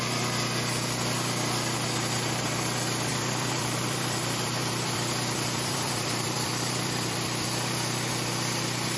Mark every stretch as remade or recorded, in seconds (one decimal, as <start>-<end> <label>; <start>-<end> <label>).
0.0-3.1 recorded; 3.1-8.1 remade; 8.1-9.0 recorded